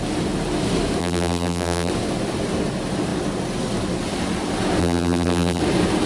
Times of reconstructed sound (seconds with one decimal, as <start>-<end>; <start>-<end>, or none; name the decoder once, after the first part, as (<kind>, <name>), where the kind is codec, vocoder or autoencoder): 1.0-1.9 (vocoder, BigVGAN v2); 4.8-5.6